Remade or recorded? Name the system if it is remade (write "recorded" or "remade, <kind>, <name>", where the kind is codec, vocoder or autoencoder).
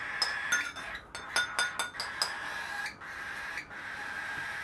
recorded